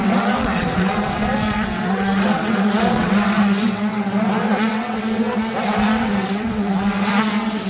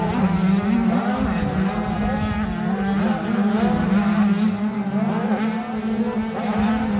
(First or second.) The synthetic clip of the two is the first